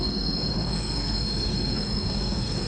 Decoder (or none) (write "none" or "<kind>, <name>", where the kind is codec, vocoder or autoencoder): codec, SNAC